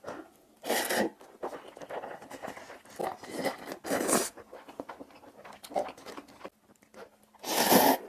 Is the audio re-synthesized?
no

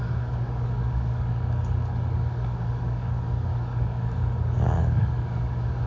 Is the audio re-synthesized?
yes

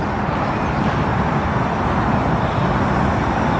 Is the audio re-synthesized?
no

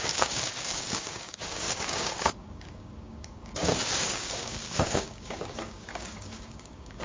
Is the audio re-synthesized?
yes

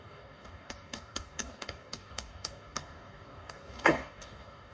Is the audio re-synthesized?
yes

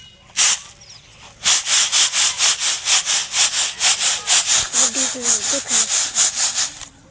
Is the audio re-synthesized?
no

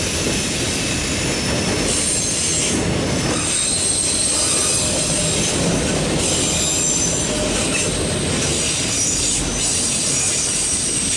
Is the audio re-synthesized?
no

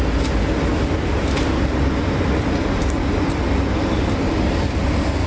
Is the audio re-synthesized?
no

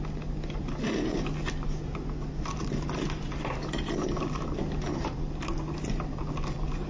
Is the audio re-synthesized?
no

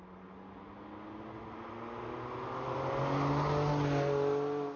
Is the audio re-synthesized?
no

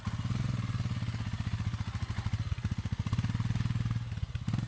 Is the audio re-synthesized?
no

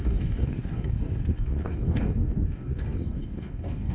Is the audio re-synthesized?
yes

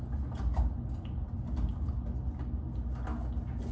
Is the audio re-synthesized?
no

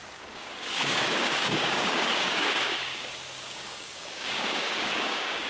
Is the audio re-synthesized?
yes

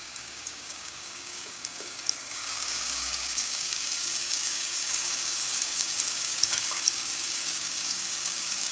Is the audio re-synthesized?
yes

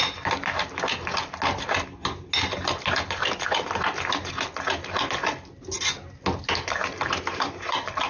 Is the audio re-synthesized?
no